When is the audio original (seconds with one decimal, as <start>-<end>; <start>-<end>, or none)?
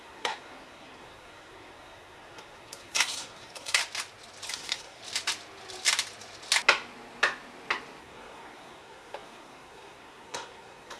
3.8-4.5; 5.0-8.0